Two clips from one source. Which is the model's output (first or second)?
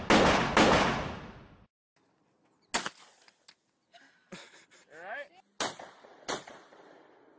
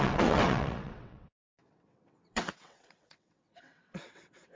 second